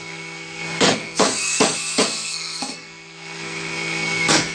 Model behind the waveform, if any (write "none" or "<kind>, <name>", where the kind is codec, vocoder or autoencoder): codec, SNAC